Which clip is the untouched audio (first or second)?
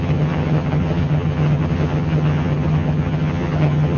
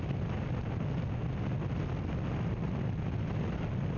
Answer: second